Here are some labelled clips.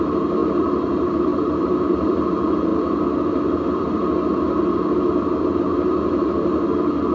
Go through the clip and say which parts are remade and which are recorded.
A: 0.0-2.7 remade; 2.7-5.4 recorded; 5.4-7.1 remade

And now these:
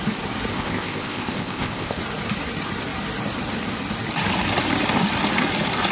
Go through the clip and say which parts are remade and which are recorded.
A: 0.0-0.5 recorded; 0.5-2.0 remade; 2.0-5.9 recorded

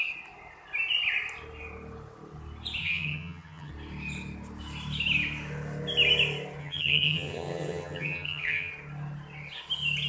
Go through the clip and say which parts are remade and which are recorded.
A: 0.0-2.8 recorded; 2.8-3.7 remade; 3.7-6.6 recorded; 6.6-8.7 remade; 8.7-10.1 recorded

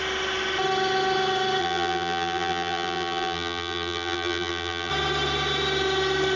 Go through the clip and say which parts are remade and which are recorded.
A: 0.0-1.6 recorded; 1.6-4.9 remade; 4.9-6.4 recorded

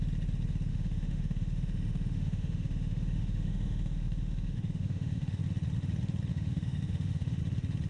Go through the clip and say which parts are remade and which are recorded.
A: 0.0-0.7 recorded; 0.7-5.4 remade; 5.4-6.3 recorded; 6.3-7.4 remade; 7.4-7.9 recorded

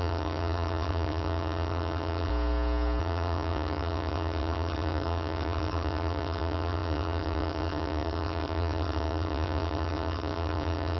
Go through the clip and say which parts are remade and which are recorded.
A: 0.0-2.3 remade; 2.3-3.0 recorded; 3.0-11.0 remade